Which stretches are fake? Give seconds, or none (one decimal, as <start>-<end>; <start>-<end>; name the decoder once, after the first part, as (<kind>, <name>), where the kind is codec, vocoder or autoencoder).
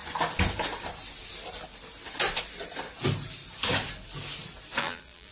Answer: 4.8-5.3 (vocoder, BigVGAN v2)